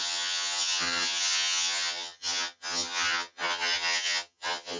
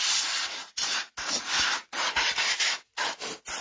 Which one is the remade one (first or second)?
first